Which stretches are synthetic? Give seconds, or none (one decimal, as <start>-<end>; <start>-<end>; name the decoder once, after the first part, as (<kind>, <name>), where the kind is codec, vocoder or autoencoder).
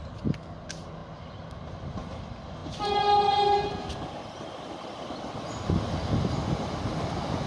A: none